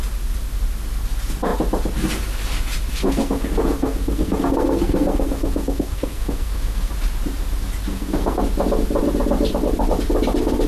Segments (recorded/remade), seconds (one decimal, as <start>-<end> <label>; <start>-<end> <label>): 0.0-2.9 recorded; 2.9-6.9 remade; 6.9-7.9 recorded; 7.9-8.4 remade; 8.4-10.7 recorded